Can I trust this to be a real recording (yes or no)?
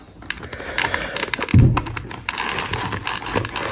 yes